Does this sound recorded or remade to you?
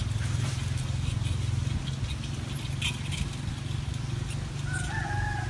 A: recorded